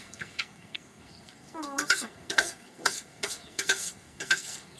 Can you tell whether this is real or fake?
fake